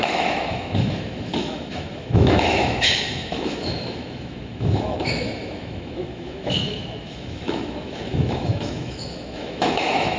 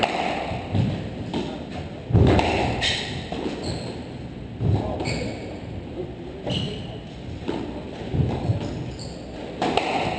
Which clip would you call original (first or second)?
second